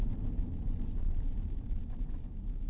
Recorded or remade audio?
remade